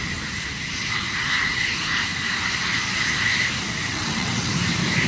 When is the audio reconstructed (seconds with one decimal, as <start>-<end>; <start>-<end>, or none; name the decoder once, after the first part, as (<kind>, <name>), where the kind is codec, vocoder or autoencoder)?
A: 3.9-4.5 (vocoder, WaveNeXt)